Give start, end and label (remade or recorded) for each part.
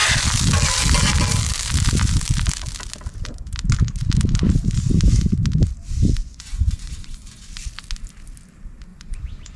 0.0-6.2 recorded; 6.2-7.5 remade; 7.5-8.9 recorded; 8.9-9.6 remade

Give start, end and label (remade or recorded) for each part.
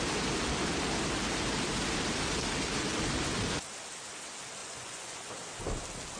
0.0-4.6 recorded; 4.6-5.3 remade; 5.3-6.2 recorded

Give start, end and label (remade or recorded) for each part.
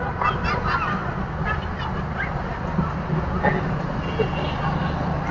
0.0-5.3 recorded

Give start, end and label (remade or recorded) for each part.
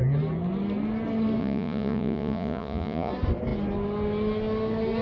0.0-1.4 recorded; 1.4-3.1 remade; 3.1-5.0 recorded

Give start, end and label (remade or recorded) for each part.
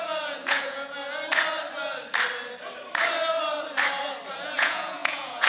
0.0-1.0 remade; 1.0-4.3 recorded; 4.3-5.5 remade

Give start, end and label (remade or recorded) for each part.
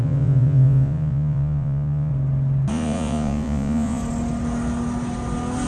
0.0-2.1 remade; 2.1-2.7 recorded; 2.7-4.0 remade; 4.0-5.7 recorded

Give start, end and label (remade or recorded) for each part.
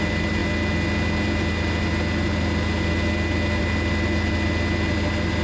0.0-5.4 recorded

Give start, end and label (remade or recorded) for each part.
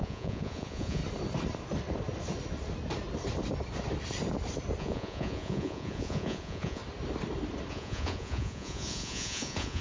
0.0-1.0 remade; 1.0-4.8 recorded; 4.8-6.8 remade; 6.8-7.7 recorded; 7.7-9.8 remade